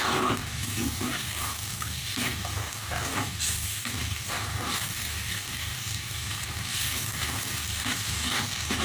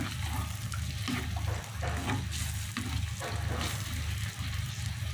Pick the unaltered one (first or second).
second